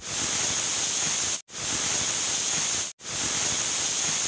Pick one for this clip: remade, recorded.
recorded